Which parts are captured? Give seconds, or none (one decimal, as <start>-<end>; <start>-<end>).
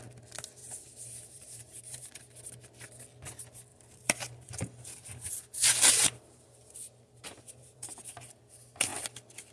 0.0-0.6; 2.2-3.7; 8.1-9.5